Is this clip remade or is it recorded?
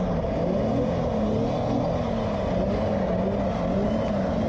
recorded